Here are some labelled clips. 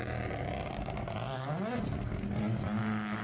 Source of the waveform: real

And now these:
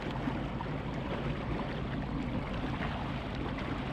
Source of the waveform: real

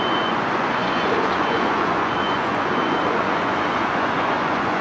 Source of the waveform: fake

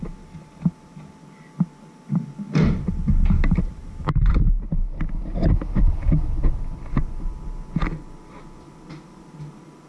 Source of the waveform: real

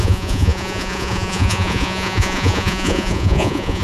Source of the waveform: fake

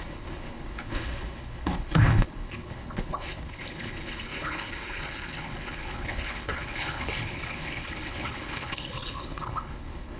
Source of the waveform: fake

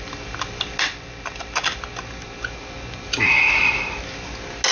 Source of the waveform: real